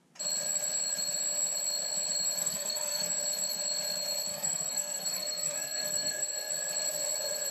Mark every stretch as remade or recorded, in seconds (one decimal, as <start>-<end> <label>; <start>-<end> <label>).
0.0-2.4 recorded; 2.4-3.1 remade; 3.1-4.3 recorded; 4.3-6.5 remade; 6.5-7.5 recorded